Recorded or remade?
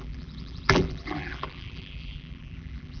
remade